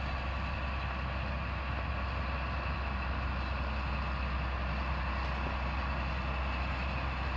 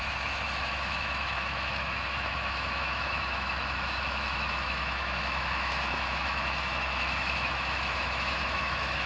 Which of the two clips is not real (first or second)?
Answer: second